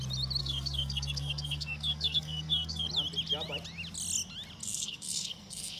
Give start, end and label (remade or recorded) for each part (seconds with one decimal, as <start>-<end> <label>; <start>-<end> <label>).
0.0-0.4 recorded; 0.4-2.9 remade; 2.9-4.6 recorded; 4.6-5.8 remade